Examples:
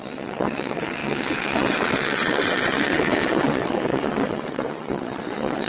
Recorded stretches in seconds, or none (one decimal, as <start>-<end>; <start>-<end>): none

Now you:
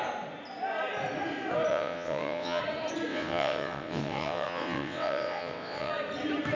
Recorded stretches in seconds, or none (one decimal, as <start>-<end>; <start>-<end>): 0.0-1.7; 2.6-3.1; 5.9-6.5

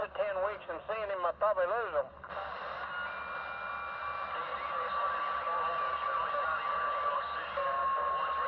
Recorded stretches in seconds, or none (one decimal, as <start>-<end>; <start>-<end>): 0.0-8.5

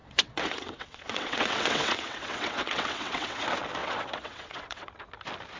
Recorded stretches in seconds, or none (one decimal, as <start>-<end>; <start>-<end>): 3.4-3.8; 4.9-5.6